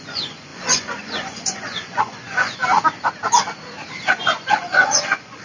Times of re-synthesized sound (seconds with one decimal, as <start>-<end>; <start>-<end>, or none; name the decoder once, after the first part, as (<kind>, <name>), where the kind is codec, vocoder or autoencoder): 0.0-2.6 (vocoder, Vocos); 4.1-5.4